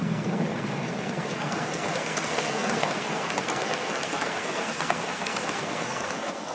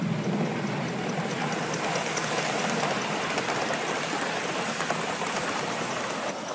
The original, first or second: second